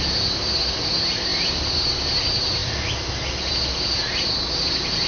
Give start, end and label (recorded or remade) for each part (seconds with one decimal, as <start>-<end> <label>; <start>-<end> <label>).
0.0-1.3 recorded; 1.3-1.9 remade; 1.9-5.1 recorded